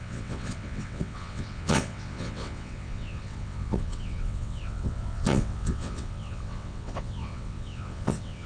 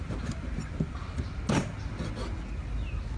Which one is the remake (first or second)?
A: first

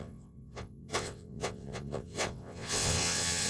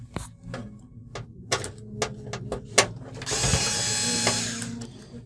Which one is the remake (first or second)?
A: first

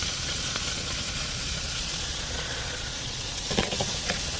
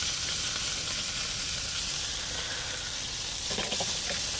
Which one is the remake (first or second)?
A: first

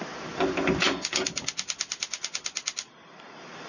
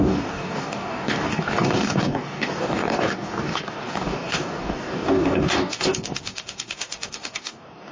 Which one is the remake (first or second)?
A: second